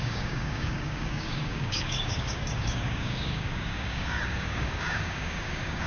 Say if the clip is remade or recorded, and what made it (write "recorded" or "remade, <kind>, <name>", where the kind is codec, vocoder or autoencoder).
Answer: remade, codec, DAC